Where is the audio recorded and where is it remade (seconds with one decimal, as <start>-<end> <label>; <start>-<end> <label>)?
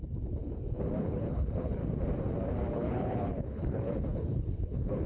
0.0-0.4 remade; 0.4-1.0 recorded; 1.0-1.8 remade; 1.8-2.7 recorded; 2.7-5.1 remade